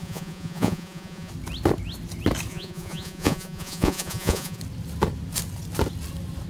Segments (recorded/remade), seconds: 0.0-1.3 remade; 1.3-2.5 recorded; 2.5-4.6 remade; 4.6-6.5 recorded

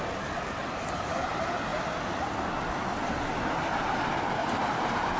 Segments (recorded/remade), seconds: 0.0-0.6 recorded; 0.6-1.2 remade; 1.2-4.4 recorded; 4.4-5.2 remade

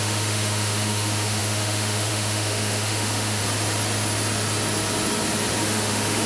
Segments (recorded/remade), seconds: 0.0-3.4 remade; 3.4-5.6 recorded; 5.6-6.3 remade

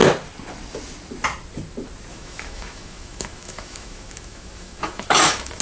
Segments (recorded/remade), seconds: 0.0-2.1 recorded; 2.1-5.6 remade

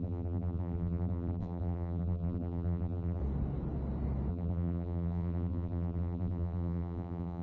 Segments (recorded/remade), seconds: 0.0-3.2 remade; 3.2-4.3 recorded; 4.3-7.4 remade

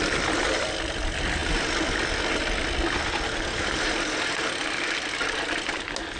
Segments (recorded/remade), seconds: 0.0-6.2 recorded